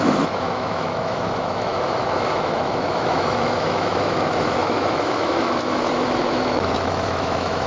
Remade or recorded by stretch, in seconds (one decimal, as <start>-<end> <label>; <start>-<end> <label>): 0.0-7.7 remade